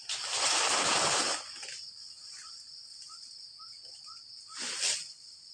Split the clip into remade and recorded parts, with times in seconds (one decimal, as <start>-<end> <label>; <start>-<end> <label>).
0.0-5.5 recorded